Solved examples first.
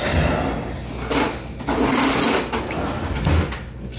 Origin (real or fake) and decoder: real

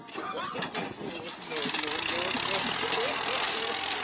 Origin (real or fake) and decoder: real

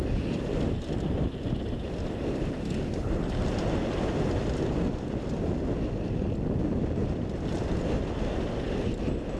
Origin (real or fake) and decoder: real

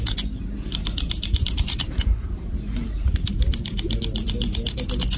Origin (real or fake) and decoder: real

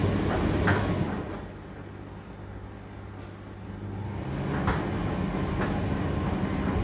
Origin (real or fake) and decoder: real